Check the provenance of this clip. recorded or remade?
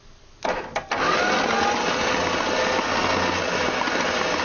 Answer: recorded